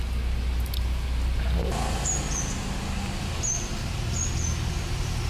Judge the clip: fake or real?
real